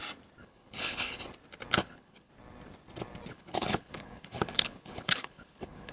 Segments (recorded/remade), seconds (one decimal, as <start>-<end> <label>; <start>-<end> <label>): 0.0-0.4 recorded; 0.4-1.2 remade; 1.2-1.8 recorded; 1.8-2.3 remade; 2.3-3.3 recorded; 3.3-5.9 remade